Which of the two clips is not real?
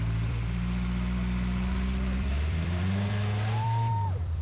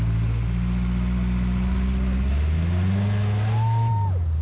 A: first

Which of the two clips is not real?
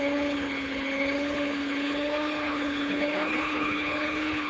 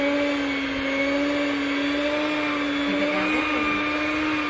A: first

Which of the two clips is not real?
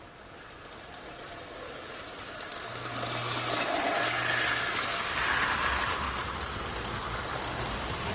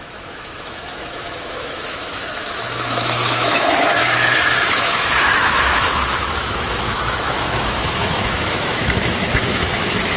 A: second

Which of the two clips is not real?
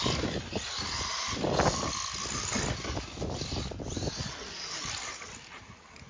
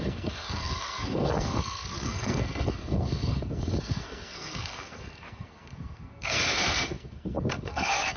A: second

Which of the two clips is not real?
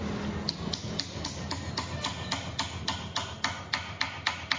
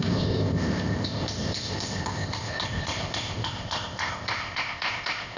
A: second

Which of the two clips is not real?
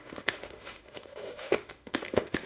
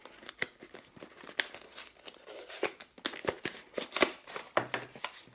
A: first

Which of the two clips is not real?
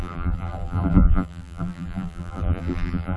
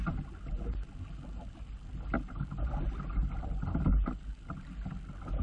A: first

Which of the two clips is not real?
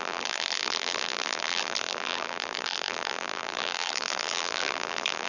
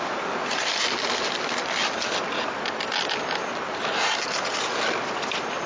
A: first